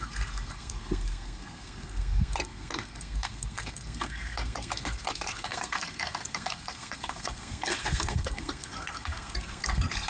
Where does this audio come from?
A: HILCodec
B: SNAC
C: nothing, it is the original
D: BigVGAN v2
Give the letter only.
B